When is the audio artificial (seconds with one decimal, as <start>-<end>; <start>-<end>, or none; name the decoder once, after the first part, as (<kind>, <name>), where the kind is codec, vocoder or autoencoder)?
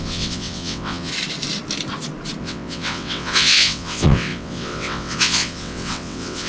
0.0-1.1 (vocoder, WaveNeXt); 2.4-6.5